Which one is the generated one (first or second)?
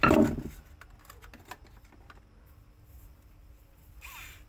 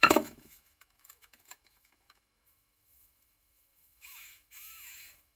second